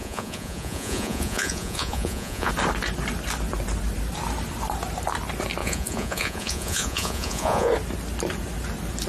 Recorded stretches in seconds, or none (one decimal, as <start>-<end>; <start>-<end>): 2.5-5.6; 7.7-9.1